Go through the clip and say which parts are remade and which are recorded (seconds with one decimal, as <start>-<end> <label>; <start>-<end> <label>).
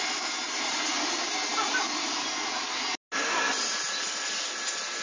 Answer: 0.0-5.0 recorded